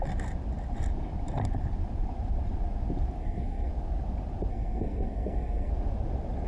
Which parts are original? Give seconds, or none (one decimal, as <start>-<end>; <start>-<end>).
0.0-3.2; 3.7-4.5; 5.7-6.5